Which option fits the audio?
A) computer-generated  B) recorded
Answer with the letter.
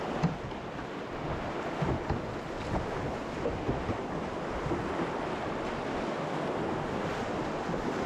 B